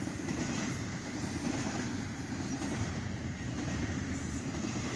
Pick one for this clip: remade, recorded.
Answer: remade